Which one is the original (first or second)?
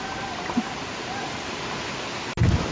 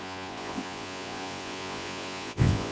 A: first